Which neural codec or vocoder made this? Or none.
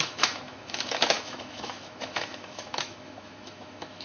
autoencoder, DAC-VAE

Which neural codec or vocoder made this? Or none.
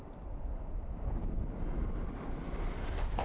none